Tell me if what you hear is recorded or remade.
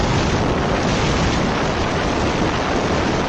recorded